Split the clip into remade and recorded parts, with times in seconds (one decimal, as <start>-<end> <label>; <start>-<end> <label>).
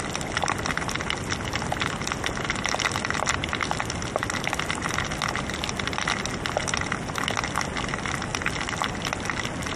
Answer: 0.0-9.8 recorded